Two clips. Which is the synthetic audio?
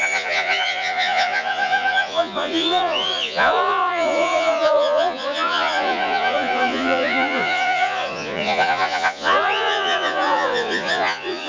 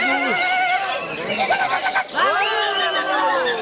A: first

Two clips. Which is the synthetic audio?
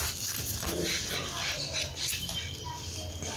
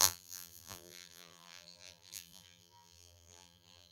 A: second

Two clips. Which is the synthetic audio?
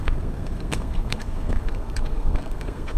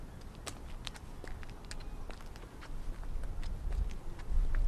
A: first